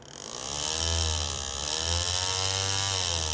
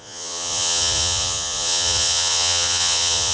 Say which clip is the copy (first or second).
second